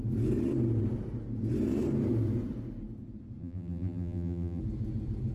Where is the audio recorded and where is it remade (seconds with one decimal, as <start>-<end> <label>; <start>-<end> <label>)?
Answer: 0.0-3.4 recorded; 3.4-4.6 remade; 4.6-5.3 recorded